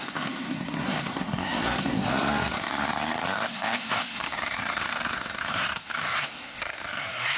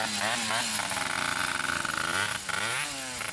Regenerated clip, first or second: first